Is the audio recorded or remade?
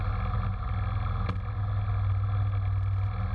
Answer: recorded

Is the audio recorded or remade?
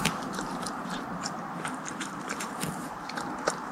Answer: remade